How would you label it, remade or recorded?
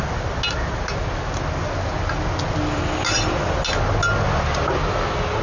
recorded